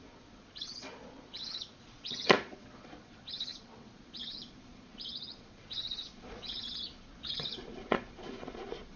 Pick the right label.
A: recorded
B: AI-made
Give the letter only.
B